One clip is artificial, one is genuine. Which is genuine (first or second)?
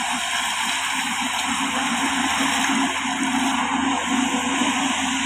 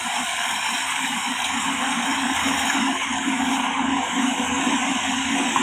first